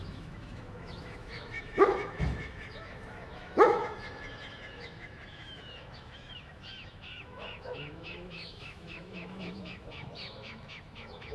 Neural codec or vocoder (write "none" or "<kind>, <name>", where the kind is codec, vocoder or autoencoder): autoencoder, DAC-VAE